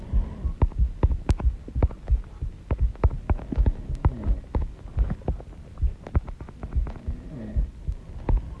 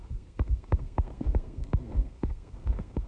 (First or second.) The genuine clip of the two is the first